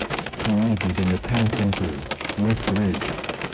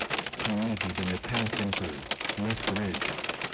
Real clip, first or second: second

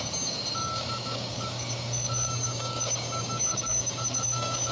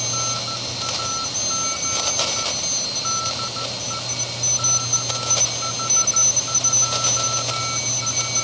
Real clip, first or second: second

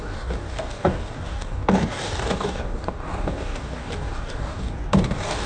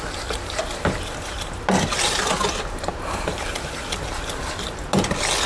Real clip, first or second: second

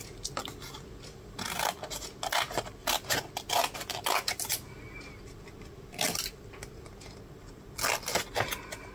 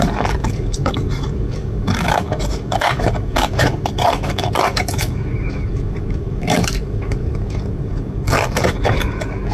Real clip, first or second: first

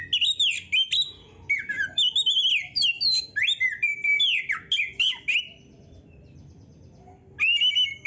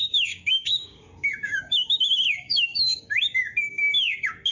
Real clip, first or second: first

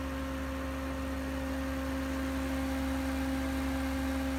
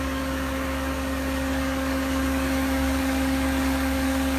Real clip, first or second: first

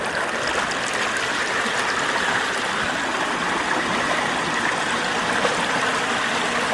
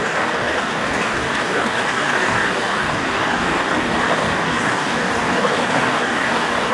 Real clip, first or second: first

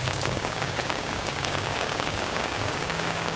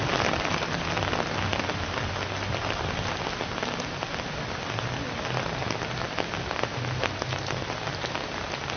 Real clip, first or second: second